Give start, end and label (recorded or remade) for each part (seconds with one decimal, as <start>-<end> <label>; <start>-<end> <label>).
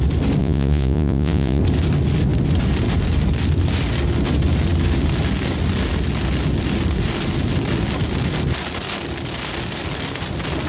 0.0-0.4 recorded; 0.4-1.6 remade; 1.6-10.7 recorded